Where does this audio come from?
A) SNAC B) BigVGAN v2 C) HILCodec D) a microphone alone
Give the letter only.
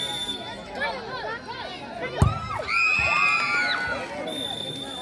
D